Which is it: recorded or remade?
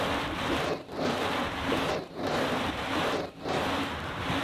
recorded